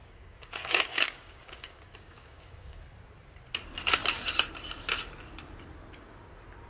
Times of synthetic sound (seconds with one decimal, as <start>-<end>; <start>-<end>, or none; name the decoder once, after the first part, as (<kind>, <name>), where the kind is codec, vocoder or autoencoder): 0.0-2.8 (codec, DAC)